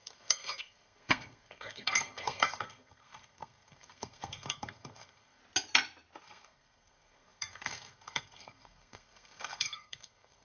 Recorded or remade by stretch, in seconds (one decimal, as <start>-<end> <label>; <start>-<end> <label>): 0.0-5.4 remade; 5.4-6.2 recorded; 6.2-10.4 remade